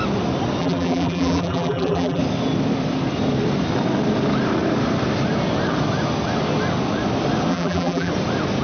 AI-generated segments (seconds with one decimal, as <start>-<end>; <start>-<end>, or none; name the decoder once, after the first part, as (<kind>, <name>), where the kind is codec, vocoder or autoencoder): 0.6-2.2 (vocoder, BigVGAN v2); 7.5-8.1